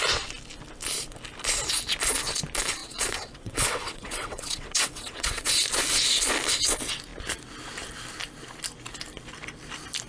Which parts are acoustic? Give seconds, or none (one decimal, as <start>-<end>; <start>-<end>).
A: 0.0-2.8; 5.6-10.1